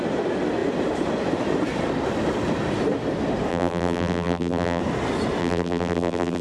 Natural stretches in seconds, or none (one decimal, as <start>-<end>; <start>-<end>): 0.0-3.5; 4.8-5.4